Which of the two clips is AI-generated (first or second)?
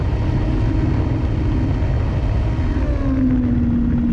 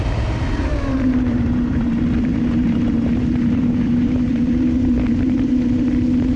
second